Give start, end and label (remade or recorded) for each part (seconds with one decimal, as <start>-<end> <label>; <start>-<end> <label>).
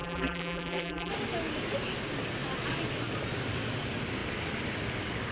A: 0.0-1.1 remade; 1.1-5.3 recorded